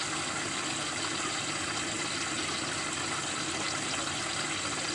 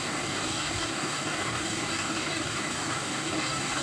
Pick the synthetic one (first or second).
second